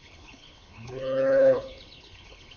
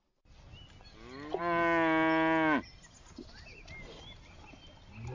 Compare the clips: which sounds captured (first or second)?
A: second